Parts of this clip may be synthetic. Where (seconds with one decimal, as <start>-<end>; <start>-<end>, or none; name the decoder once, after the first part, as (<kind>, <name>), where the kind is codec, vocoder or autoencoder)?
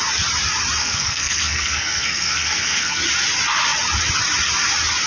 0.8-3.0 (codec, SNAC)